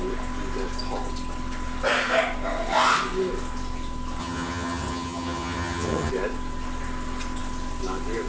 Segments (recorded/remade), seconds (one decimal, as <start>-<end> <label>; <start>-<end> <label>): 0.0-4.2 recorded; 4.2-6.1 remade; 6.1-8.3 recorded